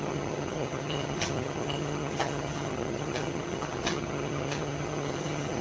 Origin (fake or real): fake